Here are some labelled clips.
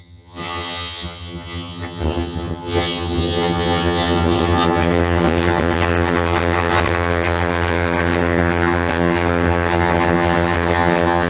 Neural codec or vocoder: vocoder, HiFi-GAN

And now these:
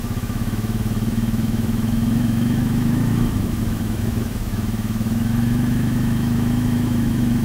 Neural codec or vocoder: autoencoder, DAC-VAE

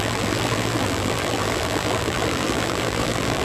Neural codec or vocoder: vocoder, BigVGAN v2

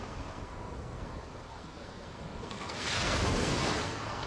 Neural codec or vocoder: codec, SNAC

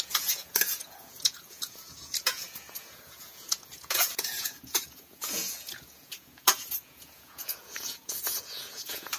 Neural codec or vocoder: vocoder, Vocos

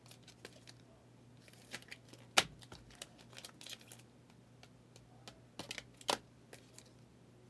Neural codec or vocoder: none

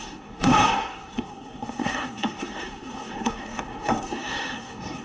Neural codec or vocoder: codec, SNAC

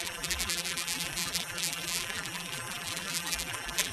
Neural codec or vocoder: vocoder, BigVGAN v2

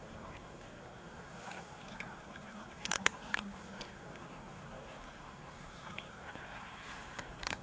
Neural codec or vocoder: codec, SNAC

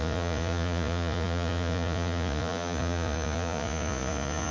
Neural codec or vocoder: vocoder, Vocos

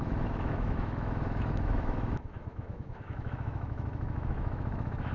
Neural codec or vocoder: autoencoder, DAC-VAE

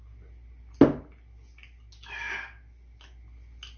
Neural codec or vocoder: none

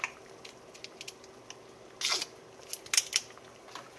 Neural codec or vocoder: none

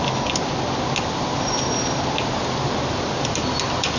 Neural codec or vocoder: none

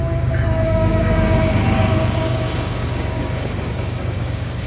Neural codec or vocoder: codec, DAC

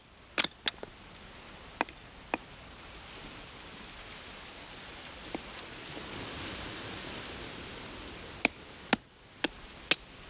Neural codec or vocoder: none